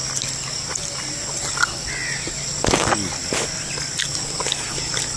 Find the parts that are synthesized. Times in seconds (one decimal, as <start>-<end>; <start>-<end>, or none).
none